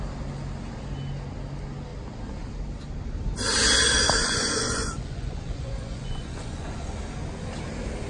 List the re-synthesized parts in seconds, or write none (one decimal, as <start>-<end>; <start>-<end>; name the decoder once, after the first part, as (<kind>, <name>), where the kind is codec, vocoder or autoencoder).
4.2-7.0 (vocoder, Vocos)